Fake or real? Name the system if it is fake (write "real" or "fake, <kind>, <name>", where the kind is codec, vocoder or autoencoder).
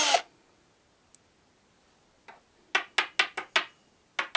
real